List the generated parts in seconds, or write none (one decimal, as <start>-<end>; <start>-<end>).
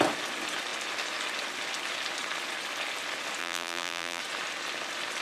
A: 3.4-4.2